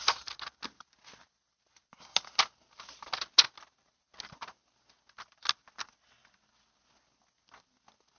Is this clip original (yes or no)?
yes